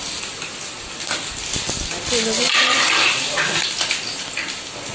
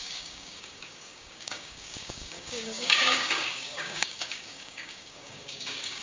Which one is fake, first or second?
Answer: second